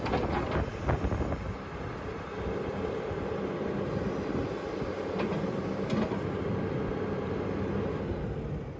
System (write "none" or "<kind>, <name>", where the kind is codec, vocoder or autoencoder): none